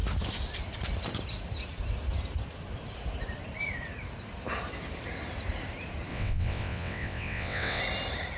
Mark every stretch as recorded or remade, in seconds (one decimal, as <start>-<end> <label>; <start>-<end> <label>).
0.0-6.1 recorded; 6.1-7.8 remade; 7.8-8.4 recorded